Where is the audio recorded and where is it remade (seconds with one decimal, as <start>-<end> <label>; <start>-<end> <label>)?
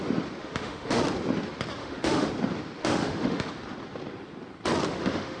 0.0-0.4 recorded; 0.4-1.0 remade; 1.0-1.8 recorded; 1.8-2.3 remade; 2.3-2.8 recorded; 2.8-3.5 remade; 3.5-4.9 recorded; 4.9-5.4 remade